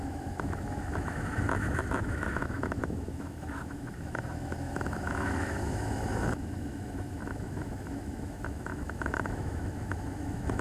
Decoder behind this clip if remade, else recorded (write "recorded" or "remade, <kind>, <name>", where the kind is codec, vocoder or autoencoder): remade, autoencoder, DAC-VAE